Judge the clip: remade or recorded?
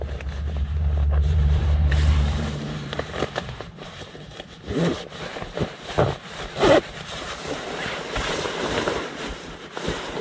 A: remade